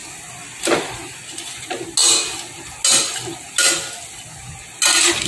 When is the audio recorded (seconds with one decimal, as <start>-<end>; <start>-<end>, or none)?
0.0-5.3